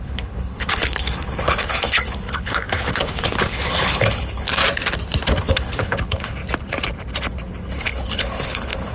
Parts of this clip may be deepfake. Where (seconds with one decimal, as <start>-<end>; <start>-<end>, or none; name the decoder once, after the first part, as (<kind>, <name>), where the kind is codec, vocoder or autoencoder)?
0.0-4.6 (codec, HILCodec); 5.5-6.4; 7.8-8.9